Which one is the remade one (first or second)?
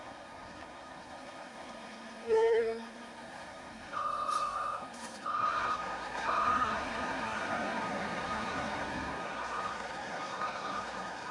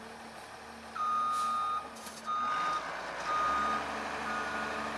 first